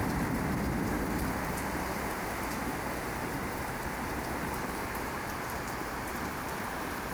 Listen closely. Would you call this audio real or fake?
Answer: fake